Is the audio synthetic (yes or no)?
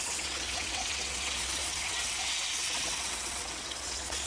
yes